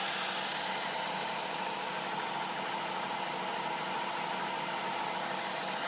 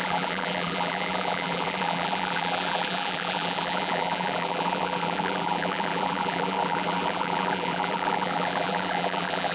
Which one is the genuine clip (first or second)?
first